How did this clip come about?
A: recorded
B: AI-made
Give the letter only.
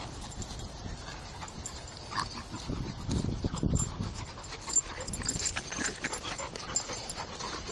A